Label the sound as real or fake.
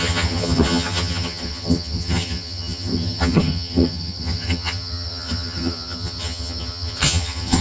fake